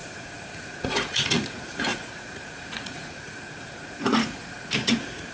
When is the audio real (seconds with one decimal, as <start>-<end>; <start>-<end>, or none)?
none

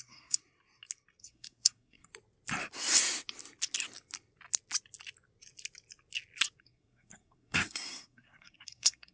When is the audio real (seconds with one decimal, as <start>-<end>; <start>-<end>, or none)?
0.4-1.2; 2.1-6.6

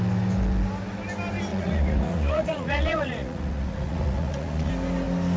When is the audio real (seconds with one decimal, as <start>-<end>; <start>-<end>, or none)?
0.0-1.5; 4.7-5.4

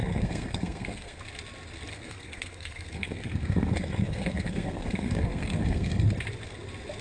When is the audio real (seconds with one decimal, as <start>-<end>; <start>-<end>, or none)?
1.2-1.9; 6.1-7.0

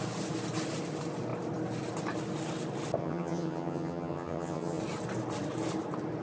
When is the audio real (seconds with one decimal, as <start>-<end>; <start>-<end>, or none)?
0.0-3.0; 4.8-6.2

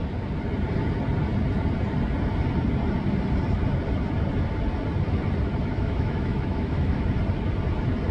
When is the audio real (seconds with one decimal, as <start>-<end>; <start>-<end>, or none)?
0.0-5.7; 7.0-8.1

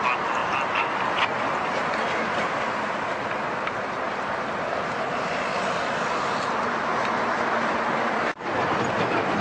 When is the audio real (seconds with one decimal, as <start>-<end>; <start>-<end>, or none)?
0.0-9.4